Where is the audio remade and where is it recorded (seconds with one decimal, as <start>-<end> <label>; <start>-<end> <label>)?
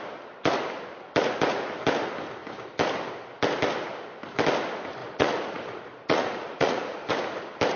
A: 0.0-5.0 recorded; 5.0-7.1 remade; 7.1-7.8 recorded